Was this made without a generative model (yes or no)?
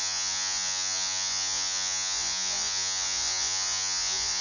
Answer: no